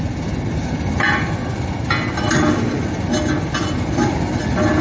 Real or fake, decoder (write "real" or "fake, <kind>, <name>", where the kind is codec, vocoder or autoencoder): real